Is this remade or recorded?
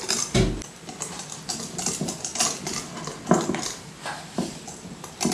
recorded